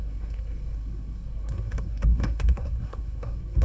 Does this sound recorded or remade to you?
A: remade